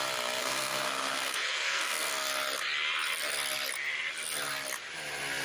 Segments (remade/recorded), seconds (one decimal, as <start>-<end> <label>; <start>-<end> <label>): 0.0-0.4 recorded; 0.4-2.1 remade; 2.1-5.4 recorded